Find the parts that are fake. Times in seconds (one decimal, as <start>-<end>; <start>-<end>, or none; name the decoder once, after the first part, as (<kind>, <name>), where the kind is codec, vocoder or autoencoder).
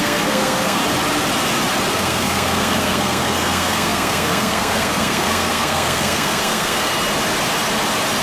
0.0-0.8 (codec, SNAC); 1.9-6.9